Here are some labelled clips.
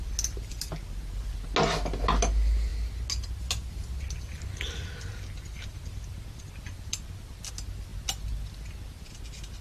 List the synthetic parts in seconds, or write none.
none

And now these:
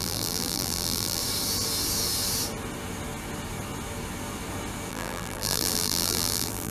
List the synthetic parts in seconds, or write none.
0.0-1.2; 4.9-6.7